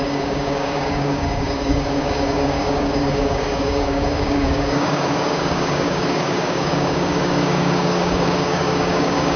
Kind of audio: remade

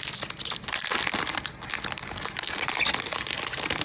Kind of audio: recorded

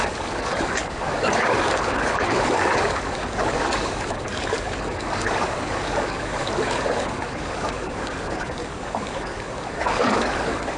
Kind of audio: remade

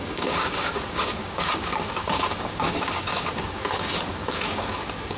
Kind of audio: remade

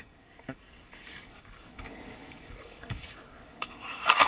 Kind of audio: remade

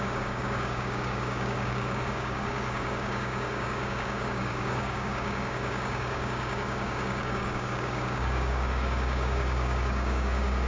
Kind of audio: remade